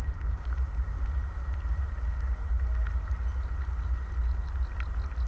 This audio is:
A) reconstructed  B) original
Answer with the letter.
B